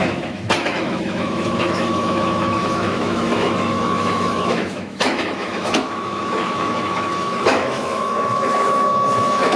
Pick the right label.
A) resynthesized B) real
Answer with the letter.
A